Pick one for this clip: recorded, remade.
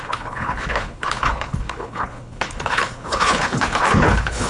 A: remade